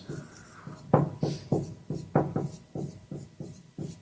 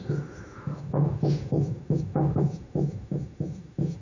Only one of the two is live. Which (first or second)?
first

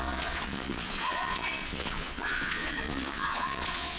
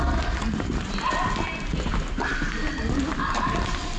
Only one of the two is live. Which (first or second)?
second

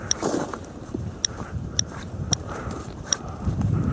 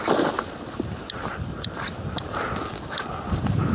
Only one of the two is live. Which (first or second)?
second